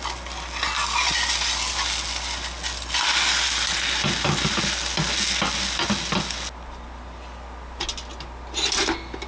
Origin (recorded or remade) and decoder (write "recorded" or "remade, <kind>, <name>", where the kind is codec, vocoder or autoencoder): recorded